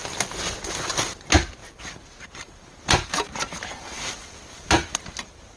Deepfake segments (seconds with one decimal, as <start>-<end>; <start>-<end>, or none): 1.6-5.0